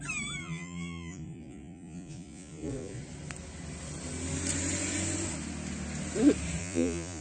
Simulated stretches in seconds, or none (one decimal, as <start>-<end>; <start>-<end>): 0.4-3.0; 6.6-7.2